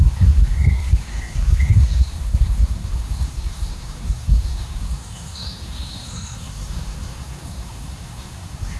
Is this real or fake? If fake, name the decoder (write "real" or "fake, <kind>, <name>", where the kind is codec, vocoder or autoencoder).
fake, codec, SNAC